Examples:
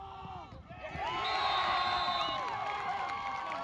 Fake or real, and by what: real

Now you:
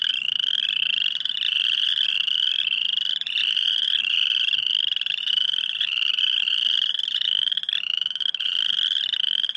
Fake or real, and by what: fake, vocoder, BigVGAN v2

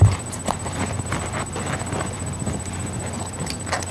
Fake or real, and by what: real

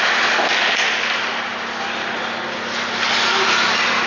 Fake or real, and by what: real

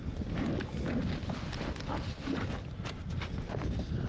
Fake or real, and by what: real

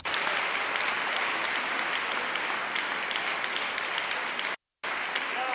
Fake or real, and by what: real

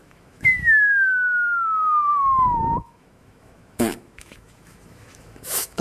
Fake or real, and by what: fake, autoencoder, DAC-VAE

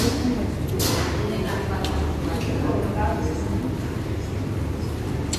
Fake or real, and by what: real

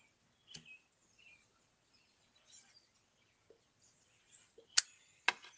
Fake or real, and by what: real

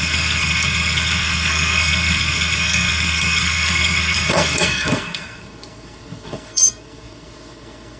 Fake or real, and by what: fake, codec, SNAC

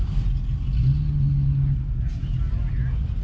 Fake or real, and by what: real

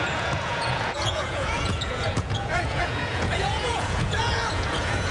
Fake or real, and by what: fake, vocoder, Vocos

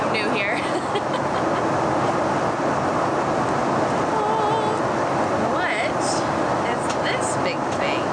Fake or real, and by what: real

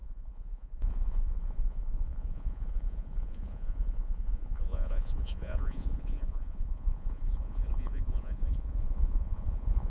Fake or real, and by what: fake, vocoder, Vocos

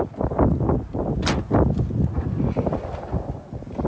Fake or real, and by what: real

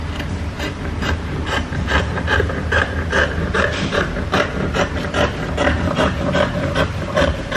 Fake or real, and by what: fake, vocoder, BigVGAN v2